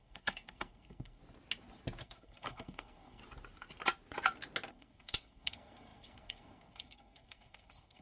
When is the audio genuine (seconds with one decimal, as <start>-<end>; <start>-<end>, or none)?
1.2-2.0; 3.2-4.7